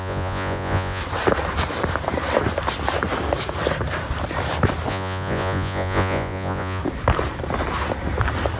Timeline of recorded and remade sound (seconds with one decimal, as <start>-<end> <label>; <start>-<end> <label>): 0.0-1.0 remade; 1.0-4.9 recorded; 4.9-6.8 remade; 6.8-8.6 recorded